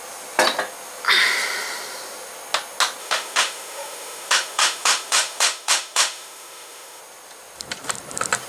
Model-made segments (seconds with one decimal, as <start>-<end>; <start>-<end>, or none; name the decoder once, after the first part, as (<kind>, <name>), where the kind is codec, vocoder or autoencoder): 3.0-7.0 (autoencoder, DAC-VAE)